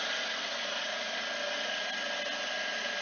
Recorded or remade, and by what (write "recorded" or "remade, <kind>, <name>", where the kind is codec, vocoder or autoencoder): recorded